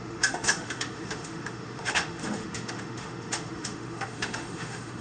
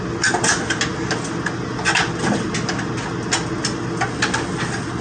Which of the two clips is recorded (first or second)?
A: second